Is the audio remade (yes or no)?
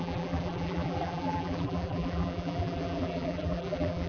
yes